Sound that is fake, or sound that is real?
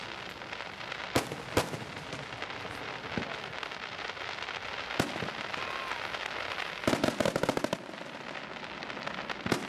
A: real